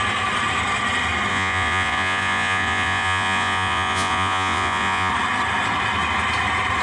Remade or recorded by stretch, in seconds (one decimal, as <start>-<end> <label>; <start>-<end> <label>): 0.0-1.3 recorded; 1.3-5.1 remade; 5.1-6.8 recorded